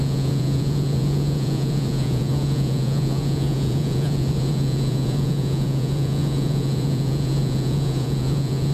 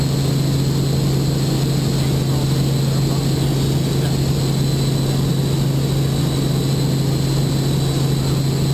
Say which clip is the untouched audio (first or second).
second